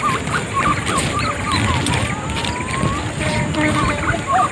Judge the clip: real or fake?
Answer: real